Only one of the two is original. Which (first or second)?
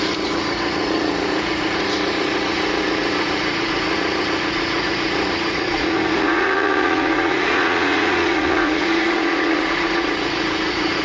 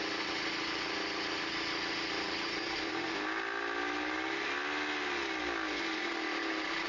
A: second